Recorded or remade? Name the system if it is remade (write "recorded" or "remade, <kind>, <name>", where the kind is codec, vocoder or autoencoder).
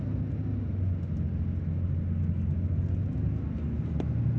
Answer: recorded